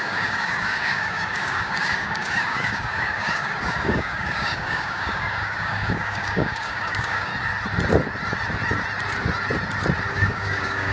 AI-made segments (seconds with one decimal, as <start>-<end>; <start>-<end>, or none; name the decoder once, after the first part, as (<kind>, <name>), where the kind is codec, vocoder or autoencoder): 0.0-7.3 (codec, DAC); 10.1-10.9